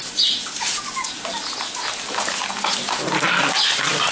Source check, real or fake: real